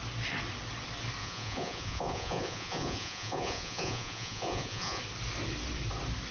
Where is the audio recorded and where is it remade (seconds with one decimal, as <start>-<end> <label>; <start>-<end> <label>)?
0.0-1.2 recorded; 1.2-5.0 remade; 5.0-6.3 recorded